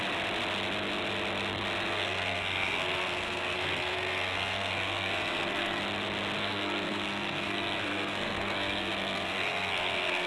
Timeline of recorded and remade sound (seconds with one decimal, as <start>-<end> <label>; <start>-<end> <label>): 0.0-1.9 recorded; 1.9-5.8 remade; 5.8-6.4 recorded; 6.4-10.3 remade